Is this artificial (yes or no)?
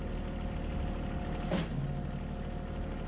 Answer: no